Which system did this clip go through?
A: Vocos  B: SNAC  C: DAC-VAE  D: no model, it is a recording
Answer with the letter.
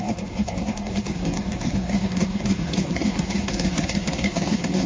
B